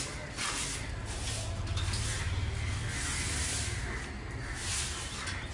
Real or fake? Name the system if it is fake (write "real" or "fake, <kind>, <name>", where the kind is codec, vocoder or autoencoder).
real